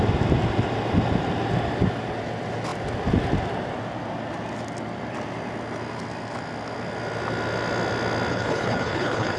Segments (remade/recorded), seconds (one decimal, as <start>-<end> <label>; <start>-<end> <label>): 0.0-8.3 recorded; 8.3-9.4 remade